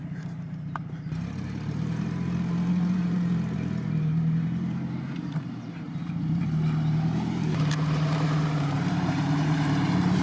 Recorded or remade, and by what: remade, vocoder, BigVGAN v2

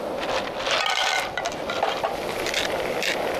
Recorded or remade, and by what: recorded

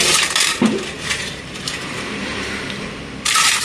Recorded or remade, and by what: remade, vocoder, BigVGAN v2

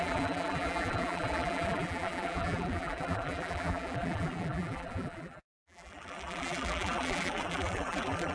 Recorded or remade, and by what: remade, vocoder, BigVGAN v2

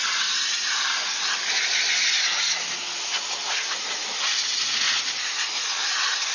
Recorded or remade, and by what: recorded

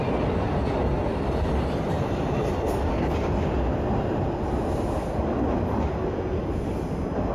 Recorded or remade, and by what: recorded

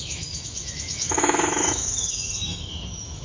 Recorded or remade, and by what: remade, autoencoder, DAC-VAE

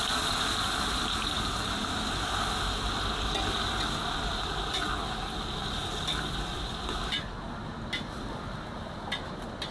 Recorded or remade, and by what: recorded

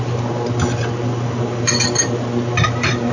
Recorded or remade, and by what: remade, vocoder, BigVGAN v2